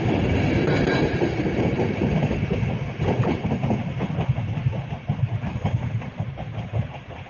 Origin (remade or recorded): remade